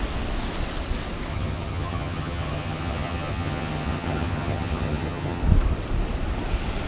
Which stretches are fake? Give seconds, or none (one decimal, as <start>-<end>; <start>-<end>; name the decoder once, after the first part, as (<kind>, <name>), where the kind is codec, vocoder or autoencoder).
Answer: 1.3-5.4 (vocoder, HiFi-GAN)